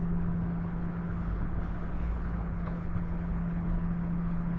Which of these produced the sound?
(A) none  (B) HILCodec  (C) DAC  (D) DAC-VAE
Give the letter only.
B